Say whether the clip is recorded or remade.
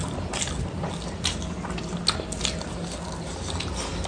recorded